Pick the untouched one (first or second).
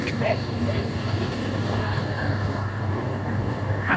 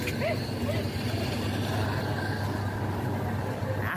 second